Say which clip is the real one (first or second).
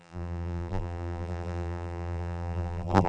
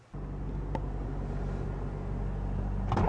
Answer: second